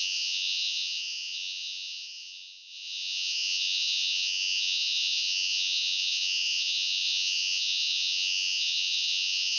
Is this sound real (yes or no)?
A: no